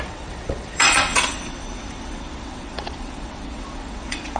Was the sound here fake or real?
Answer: fake